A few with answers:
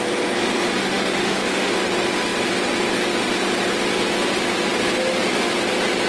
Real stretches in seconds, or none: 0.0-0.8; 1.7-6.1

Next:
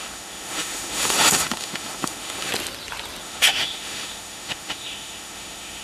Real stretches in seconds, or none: 2.5-3.2

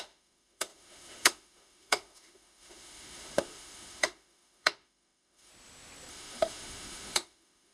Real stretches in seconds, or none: 5.5-6.1

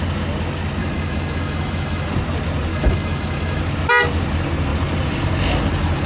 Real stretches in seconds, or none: 0.0-0.8; 2.1-2.7; 3.6-6.1